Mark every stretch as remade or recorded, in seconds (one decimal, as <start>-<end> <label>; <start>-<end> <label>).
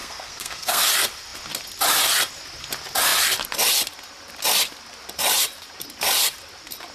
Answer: 0.0-0.8 remade; 0.8-6.9 recorded